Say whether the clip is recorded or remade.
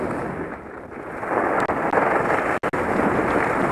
recorded